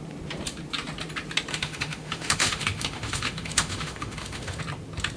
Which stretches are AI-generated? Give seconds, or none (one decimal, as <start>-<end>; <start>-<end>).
1.5-4.6